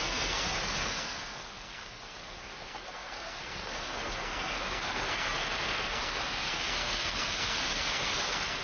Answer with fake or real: fake